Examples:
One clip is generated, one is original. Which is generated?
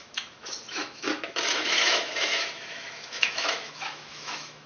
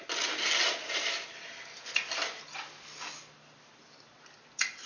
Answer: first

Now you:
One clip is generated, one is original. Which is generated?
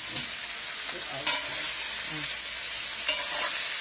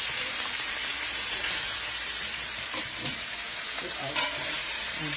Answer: second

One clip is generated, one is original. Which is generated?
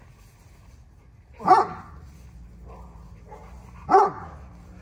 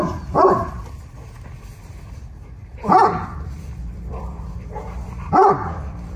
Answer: second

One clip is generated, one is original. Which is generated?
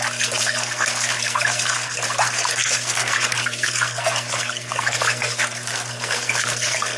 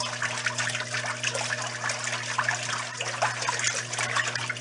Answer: first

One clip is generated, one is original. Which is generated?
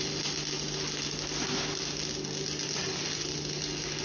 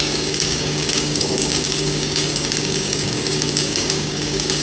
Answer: second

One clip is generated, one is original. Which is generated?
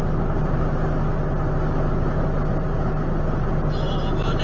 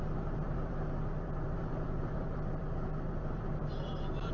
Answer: second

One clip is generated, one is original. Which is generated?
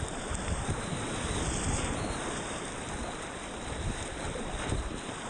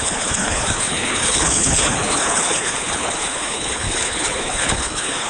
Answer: second